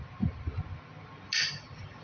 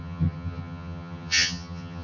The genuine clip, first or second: first